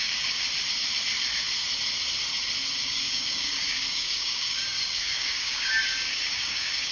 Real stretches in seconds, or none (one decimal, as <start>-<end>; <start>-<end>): 0.4-2.8